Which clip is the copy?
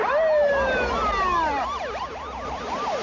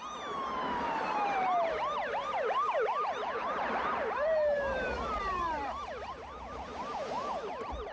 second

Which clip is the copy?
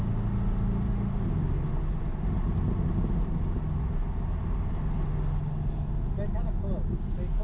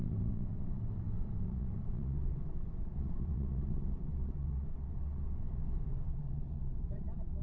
second